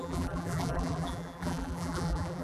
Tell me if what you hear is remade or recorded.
remade